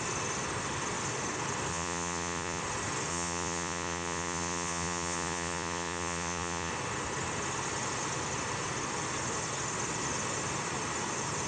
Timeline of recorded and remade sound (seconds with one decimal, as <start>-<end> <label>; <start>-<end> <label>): 0.0-1.7 recorded; 1.7-2.6 remade; 2.6-3.1 recorded; 3.1-6.7 remade; 6.7-11.5 recorded